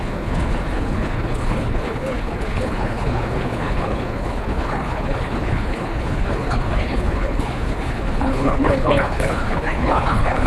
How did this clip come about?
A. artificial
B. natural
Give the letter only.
A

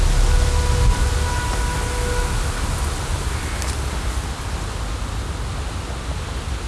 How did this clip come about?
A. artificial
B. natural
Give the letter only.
B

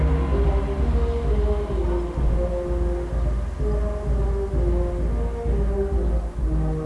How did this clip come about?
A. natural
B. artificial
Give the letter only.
A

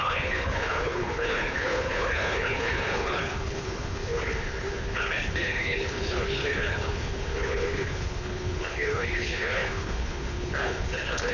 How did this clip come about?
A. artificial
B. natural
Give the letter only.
A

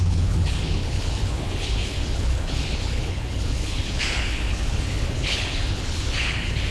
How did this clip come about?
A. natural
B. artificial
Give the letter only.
B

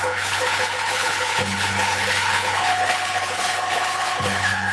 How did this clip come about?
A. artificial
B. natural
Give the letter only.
A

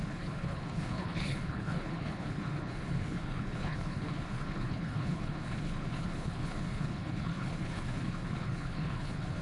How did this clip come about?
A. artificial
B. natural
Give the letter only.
A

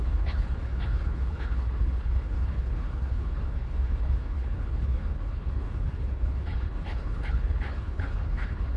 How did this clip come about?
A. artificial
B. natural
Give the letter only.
A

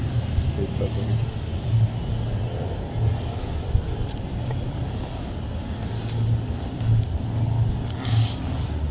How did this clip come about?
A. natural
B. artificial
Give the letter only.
A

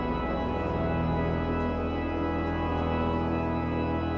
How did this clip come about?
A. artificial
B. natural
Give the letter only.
B